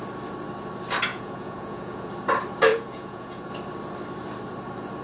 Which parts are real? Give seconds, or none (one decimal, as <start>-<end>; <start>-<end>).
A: 0.0-1.1; 2.1-2.7; 3.5-5.0